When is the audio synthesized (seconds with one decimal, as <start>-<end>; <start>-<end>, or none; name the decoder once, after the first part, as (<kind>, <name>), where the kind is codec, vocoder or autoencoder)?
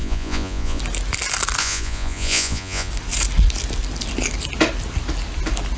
0.0-0.8 (vocoder, Vocos); 1.6-2.9